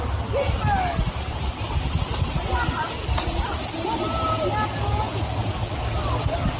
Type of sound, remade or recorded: recorded